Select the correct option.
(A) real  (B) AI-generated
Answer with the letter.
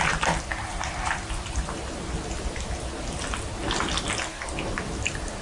A